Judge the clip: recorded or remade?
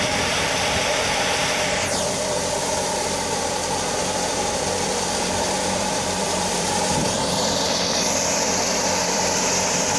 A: remade